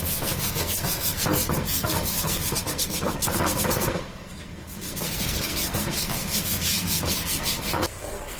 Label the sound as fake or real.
fake